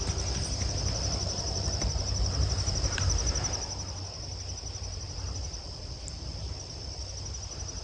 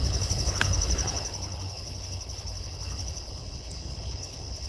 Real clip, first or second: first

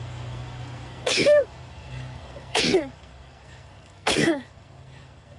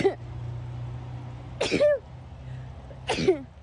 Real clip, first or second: second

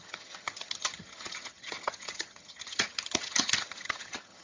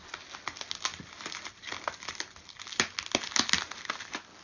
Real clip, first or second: second